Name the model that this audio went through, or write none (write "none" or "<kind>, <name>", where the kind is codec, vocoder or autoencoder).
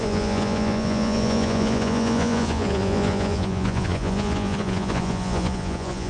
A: vocoder, Vocos